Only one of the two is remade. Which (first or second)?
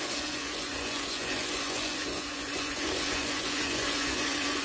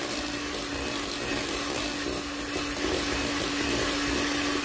first